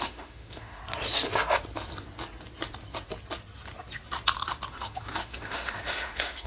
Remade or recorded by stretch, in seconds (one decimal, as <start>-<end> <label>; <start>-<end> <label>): 0.0-0.8 remade; 0.8-4.7 recorded; 4.7-6.5 remade